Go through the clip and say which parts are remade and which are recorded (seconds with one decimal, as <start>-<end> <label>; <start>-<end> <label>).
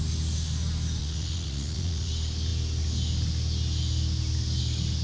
0.0-1.0 recorded; 1.0-2.1 remade; 2.1-5.0 recorded